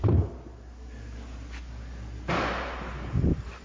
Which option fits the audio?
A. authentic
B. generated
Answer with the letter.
A